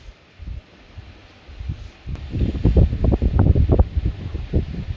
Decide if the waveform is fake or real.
real